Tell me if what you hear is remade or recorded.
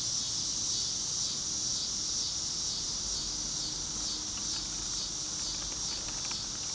recorded